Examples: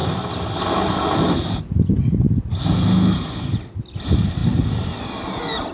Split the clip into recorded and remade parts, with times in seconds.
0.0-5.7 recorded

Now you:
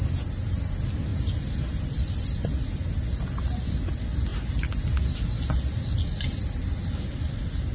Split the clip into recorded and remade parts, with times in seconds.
0.0-7.7 recorded

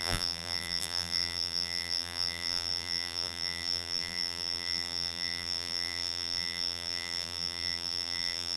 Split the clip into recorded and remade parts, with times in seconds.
0.0-8.6 remade

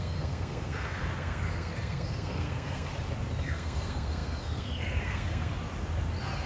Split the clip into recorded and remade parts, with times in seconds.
0.0-2.9 remade; 2.9-3.4 recorded; 3.4-5.5 remade; 5.5-6.5 recorded

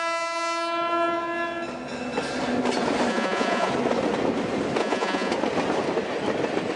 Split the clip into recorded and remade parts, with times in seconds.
0.0-3.1 recorded; 3.1-3.7 remade; 3.7-4.8 recorded; 4.8-5.3 remade; 5.3-6.8 recorded

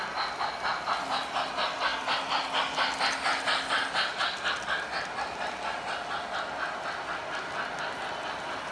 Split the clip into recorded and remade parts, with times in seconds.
0.0-8.7 recorded